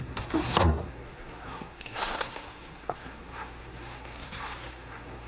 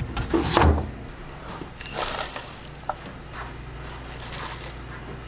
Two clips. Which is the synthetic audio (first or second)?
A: first